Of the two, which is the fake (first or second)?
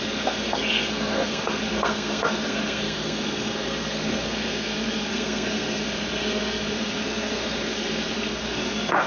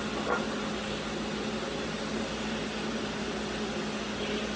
first